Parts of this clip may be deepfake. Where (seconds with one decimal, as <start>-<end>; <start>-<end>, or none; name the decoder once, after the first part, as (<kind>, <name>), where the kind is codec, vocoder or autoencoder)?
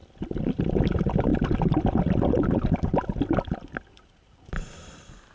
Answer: none